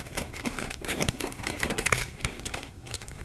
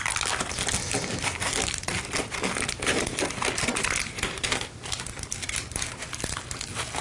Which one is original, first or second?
second